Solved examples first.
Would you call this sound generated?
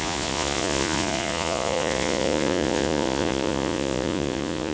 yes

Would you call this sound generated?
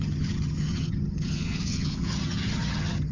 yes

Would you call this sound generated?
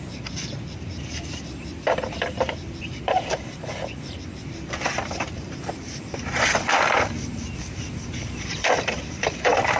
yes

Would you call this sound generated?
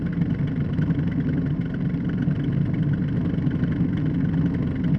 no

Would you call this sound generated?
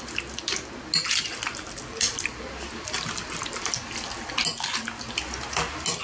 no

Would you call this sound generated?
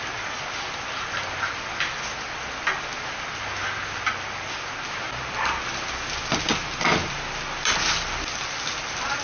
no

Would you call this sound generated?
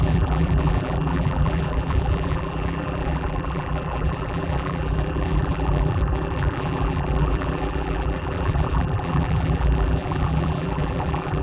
yes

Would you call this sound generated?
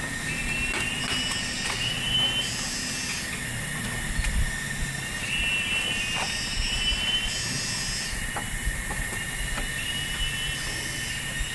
no